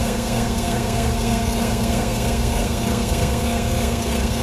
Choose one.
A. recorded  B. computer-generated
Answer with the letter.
B